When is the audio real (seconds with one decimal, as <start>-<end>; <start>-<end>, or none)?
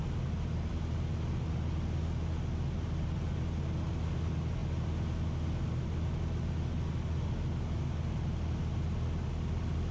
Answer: 0.0-9.9